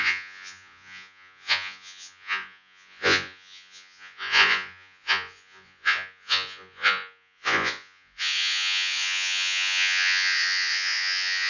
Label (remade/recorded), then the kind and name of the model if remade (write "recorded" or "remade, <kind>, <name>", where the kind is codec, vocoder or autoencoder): remade, vocoder, Vocos